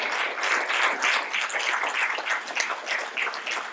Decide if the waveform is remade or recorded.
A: recorded